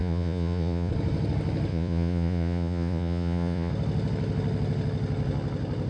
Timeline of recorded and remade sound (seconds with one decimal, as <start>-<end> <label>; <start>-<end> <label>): 0.0-0.9 remade; 0.9-1.7 recorded; 1.7-3.7 remade; 3.7-5.9 recorded